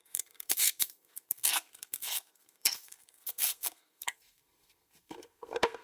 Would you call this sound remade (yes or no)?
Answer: yes